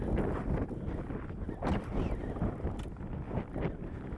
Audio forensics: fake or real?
real